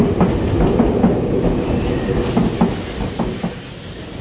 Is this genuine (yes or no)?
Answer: yes